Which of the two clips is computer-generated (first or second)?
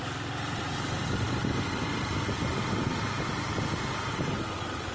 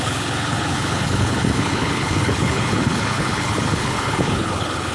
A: second